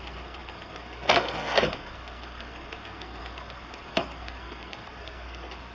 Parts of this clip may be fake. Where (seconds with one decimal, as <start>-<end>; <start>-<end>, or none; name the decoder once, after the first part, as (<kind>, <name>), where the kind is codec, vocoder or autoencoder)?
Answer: 0.0-5.7 (codec, SNAC)